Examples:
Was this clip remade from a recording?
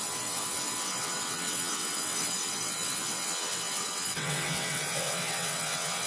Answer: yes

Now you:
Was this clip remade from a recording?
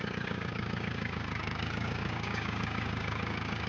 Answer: yes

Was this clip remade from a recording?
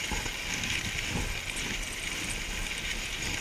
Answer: no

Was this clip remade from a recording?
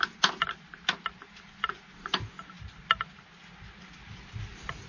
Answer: no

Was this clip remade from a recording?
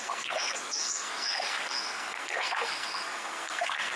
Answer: yes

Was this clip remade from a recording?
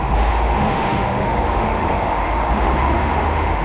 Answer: yes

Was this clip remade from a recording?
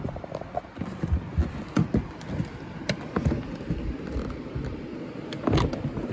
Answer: no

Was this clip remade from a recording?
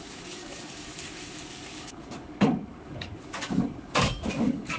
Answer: yes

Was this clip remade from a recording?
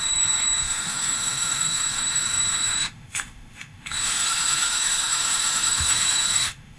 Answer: yes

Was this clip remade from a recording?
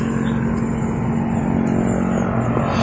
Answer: no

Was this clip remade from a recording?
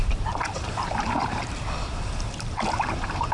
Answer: yes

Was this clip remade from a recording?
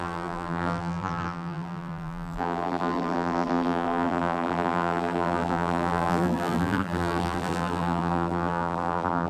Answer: yes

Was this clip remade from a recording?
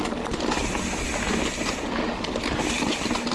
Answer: no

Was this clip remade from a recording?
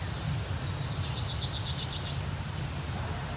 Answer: no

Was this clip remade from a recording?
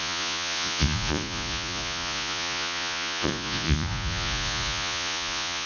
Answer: yes